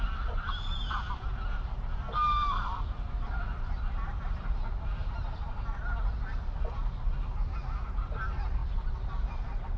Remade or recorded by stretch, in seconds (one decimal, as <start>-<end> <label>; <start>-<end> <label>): 0.0-9.8 recorded